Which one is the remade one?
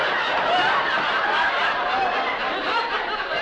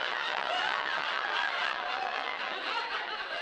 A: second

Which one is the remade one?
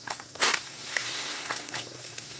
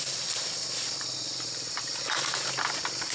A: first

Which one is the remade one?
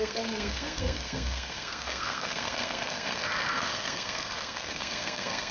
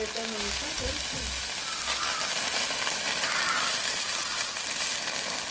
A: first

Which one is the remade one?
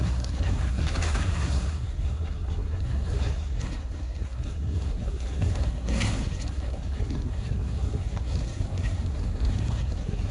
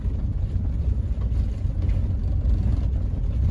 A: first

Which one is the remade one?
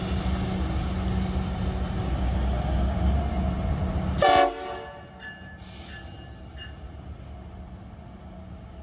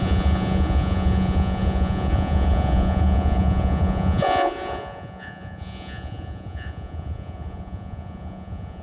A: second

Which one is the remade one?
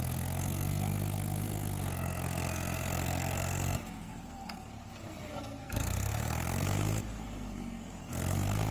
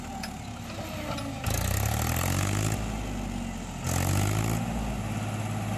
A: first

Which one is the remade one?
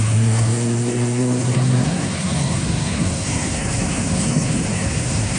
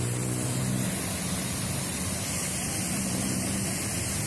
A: first